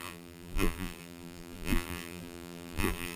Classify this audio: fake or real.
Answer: fake